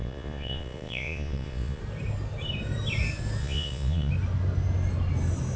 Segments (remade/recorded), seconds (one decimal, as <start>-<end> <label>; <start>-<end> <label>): 0.0-1.8 remade; 1.8-3.4 recorded; 3.4-4.1 remade; 4.1-5.6 recorded